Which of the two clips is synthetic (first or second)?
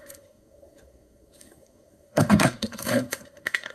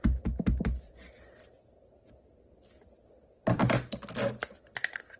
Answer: first